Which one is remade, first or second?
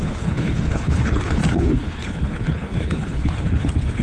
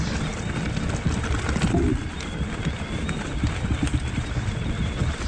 first